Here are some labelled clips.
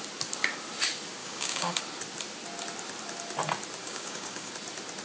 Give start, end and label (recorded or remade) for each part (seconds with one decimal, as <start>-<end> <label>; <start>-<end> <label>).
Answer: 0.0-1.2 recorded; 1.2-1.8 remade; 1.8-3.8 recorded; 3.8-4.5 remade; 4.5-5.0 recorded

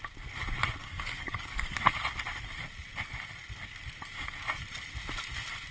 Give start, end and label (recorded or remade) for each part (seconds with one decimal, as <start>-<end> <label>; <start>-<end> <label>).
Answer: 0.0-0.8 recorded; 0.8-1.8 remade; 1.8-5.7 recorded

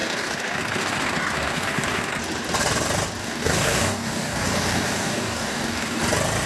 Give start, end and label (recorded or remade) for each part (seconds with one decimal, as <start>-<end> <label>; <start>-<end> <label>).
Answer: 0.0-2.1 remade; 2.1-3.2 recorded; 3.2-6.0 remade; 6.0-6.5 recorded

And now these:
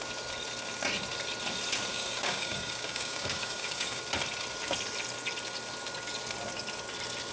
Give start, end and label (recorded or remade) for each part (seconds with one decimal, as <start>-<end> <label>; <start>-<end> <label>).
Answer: 0.0-1.9 recorded; 1.9-4.0 remade; 4.0-7.3 recorded

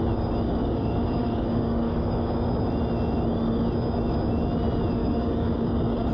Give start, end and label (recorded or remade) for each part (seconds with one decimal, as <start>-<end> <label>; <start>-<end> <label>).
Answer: 0.0-0.6 recorded; 0.6-2.3 remade; 2.3-5.0 recorded; 5.0-6.1 remade